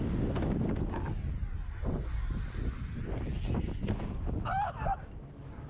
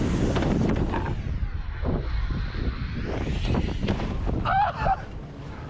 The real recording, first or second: first